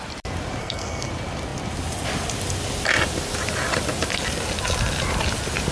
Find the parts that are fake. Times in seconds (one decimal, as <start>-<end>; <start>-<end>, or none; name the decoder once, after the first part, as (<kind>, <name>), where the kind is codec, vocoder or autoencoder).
0.6-1.1 (codec, SNAC)